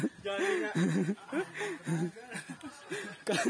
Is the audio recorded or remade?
recorded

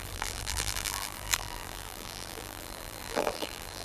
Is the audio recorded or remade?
remade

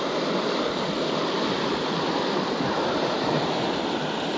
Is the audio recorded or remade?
recorded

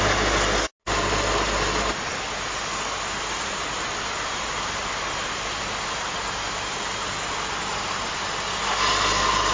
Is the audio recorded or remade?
recorded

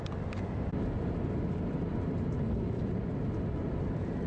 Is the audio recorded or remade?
recorded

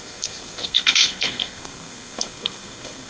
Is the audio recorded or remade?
remade